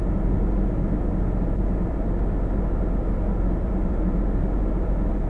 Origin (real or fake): fake